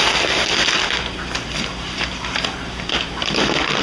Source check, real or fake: real